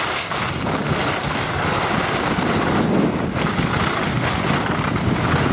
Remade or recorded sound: recorded